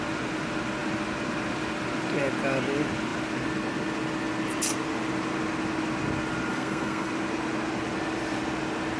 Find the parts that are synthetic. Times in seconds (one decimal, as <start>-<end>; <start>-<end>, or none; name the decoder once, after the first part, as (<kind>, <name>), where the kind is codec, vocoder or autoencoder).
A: 6.5-7.1 (codec, SNAC)